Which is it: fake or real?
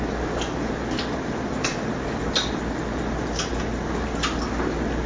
real